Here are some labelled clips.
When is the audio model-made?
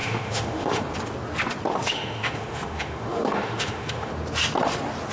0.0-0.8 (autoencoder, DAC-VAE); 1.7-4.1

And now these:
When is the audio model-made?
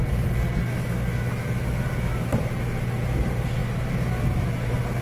none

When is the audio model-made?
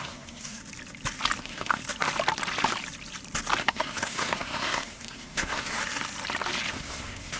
0.0-0.6 (codec, SNAC); 1.4-1.8; 3.6-5.8; 6.7-7.4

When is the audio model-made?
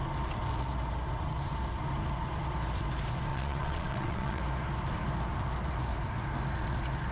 3.3-4.4 (vocoder, WaveNeXt)